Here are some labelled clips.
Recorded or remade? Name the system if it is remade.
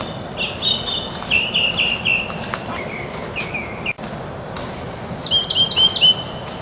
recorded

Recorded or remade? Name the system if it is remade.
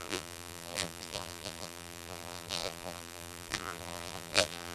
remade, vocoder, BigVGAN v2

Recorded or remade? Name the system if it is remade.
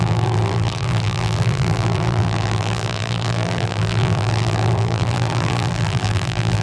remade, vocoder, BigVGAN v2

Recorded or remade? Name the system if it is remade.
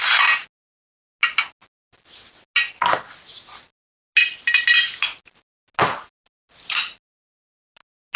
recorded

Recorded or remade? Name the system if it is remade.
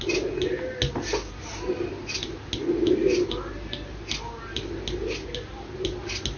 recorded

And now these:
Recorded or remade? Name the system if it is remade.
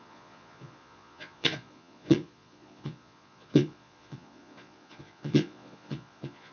remade, vocoder, Vocos